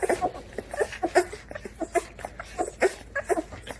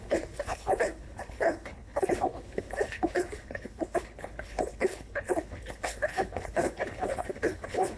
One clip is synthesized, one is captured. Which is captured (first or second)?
first